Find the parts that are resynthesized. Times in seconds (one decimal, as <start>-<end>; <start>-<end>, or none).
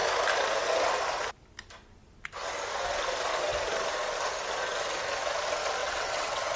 5.8-6.6